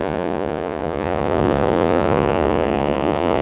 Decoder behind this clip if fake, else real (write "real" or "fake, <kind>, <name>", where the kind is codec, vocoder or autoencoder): fake, vocoder, Vocos